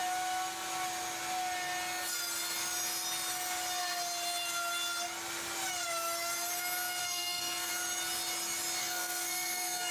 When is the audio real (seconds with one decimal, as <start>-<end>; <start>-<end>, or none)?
0.0-7.0; 7.7-8.8